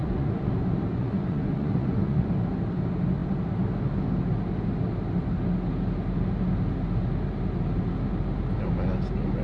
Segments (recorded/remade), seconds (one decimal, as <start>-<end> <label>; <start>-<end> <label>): 0.0-0.5 remade; 0.5-0.9 recorded; 0.9-2.3 remade; 2.3-9.4 recorded